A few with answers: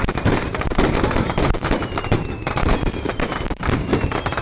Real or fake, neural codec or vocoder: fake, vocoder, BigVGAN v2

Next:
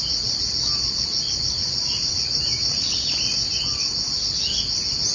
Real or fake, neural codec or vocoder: real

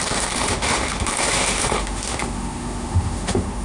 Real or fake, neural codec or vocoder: fake, autoencoder, DAC-VAE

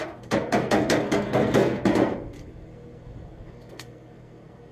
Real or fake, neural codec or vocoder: fake, codec, SNAC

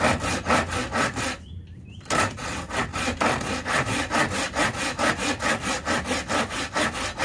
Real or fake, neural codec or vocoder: real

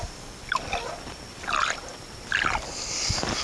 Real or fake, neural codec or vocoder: real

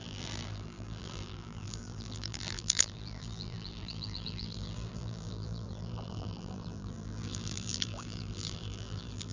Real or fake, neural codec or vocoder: fake, vocoder, BigVGAN v2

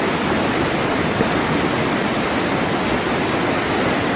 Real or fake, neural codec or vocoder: real